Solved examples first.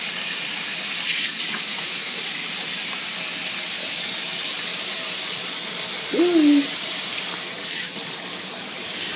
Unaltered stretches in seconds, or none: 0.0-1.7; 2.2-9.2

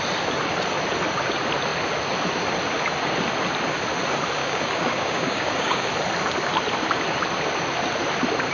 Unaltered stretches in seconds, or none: 0.0-4.4; 5.9-8.5

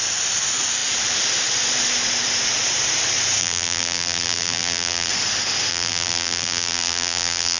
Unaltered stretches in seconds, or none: 0.0-3.4; 5.1-5.7

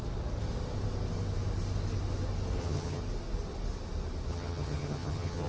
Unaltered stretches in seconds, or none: 0.0-2.6; 3.0-4.3

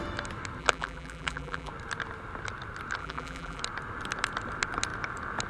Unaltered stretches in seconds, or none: 0.0-0.6; 1.7-3.0; 3.6-5.5